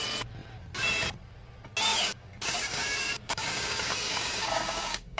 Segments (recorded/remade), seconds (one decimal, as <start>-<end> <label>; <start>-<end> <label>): 0.0-1.9 recorded; 1.9-5.2 remade

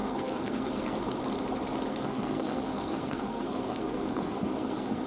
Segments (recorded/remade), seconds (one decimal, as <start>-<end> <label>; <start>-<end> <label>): 0.0-1.2 remade; 1.2-1.9 recorded; 1.9-5.1 remade